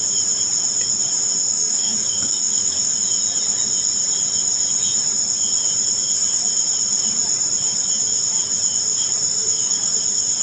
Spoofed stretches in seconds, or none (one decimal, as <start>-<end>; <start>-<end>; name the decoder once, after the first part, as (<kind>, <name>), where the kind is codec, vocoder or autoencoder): 1.5-2.9 (codec, DAC); 9.3-9.9